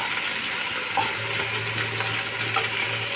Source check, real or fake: real